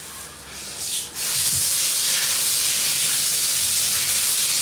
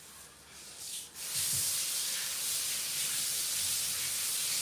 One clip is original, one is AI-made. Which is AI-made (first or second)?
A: second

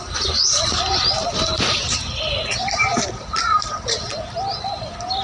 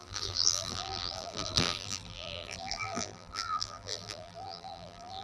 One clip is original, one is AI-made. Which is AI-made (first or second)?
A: second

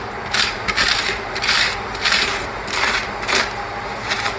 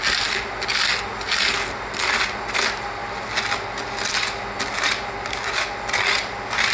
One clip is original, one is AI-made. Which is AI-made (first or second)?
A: first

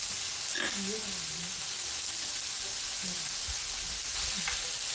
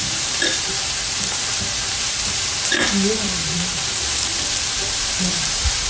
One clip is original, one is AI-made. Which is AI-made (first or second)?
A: second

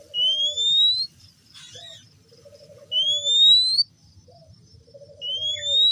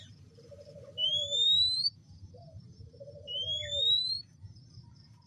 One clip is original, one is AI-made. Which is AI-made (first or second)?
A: second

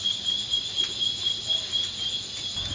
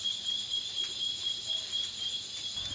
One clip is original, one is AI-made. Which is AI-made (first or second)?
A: second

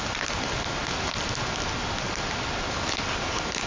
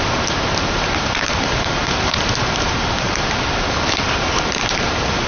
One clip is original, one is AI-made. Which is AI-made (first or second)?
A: second